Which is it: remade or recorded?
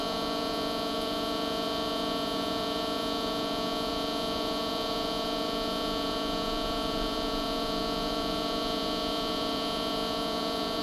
remade